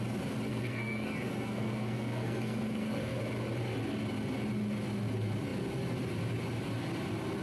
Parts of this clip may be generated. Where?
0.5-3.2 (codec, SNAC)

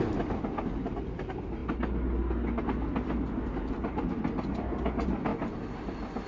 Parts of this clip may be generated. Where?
none

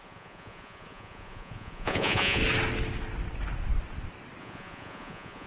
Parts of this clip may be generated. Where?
0.0-2.4 (vocoder, Vocos); 4.4-5.5

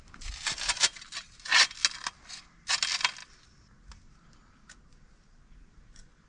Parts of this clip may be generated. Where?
none

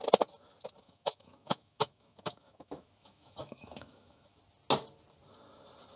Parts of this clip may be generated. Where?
0.8-4.4 (autoencoder, DAC-VAE)

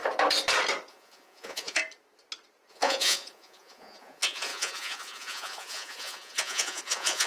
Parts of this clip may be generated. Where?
0.9-1.8 (vocoder, Vocos); 2.7-7.3

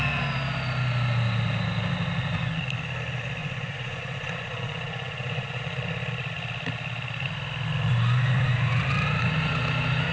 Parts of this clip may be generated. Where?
3.4-5.6 (vocoder, Vocos); 7.9-8.8